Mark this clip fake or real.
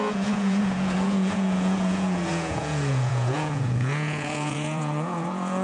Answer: fake